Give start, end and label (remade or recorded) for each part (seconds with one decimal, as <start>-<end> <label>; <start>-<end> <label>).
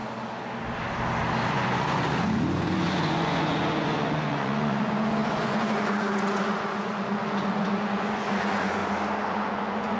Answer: 0.0-1.5 recorded; 1.5-8.8 remade; 8.8-9.3 recorded; 9.3-10.0 remade